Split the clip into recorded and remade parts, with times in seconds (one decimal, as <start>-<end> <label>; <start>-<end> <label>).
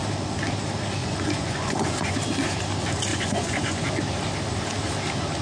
0.0-1.0 recorded; 1.0-2.2 remade; 2.2-3.1 recorded; 3.1-3.8 remade; 3.8-5.4 recorded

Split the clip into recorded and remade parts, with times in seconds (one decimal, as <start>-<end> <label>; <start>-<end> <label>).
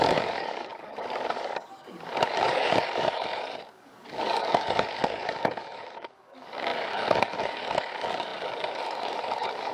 0.0-9.7 remade